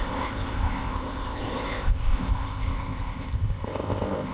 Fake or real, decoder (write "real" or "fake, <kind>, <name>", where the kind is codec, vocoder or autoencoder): fake, codec, ZipCodec